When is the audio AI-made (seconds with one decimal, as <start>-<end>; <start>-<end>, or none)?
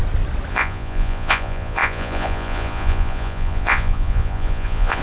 0.5-5.0